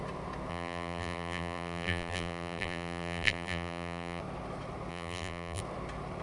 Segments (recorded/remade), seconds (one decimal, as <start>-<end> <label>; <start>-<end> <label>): 0.0-0.5 recorded; 0.5-4.2 remade; 4.2-4.9 recorded; 4.9-5.6 remade; 5.6-6.2 recorded